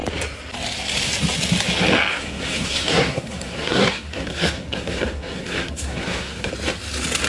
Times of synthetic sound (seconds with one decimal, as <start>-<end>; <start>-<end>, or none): 2.1-6.5